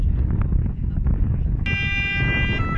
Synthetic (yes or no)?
no